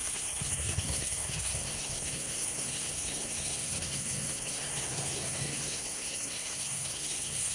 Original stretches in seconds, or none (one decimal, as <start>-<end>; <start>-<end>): none